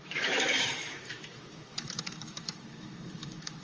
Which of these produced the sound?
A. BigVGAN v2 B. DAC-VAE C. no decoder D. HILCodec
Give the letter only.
B